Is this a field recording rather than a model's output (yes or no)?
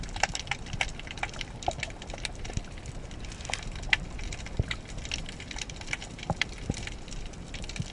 no